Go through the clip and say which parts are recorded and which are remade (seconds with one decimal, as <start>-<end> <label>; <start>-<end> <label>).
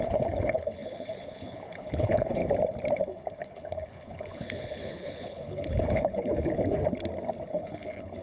0.0-2.4 remade; 2.4-3.0 recorded; 3.0-6.8 remade; 6.8-7.5 recorded; 7.5-8.2 remade